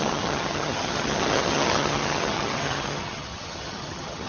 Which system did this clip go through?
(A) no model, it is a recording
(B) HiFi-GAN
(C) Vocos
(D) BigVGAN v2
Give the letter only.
B